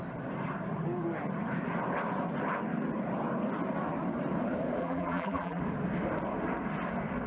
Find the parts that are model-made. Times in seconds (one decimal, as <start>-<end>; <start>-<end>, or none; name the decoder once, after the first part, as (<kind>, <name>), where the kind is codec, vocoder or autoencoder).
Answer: 4.8-5.6 (vocoder, BigVGAN v2)